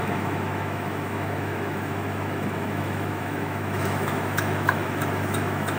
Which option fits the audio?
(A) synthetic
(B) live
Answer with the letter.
A